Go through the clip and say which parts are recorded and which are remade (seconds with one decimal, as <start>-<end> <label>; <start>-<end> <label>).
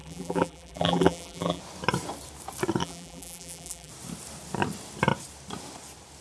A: 0.0-1.6 remade; 1.6-2.8 recorded; 2.8-3.9 remade; 3.9-6.2 recorded